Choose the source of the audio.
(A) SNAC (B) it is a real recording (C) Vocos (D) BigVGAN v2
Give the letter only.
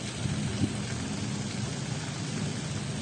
B